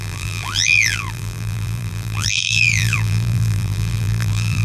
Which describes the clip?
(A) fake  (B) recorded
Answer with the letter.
A